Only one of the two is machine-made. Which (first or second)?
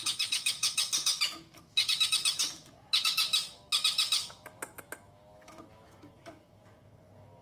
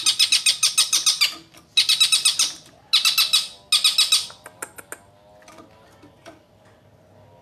first